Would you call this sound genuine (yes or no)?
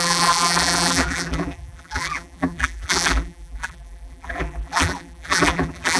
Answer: no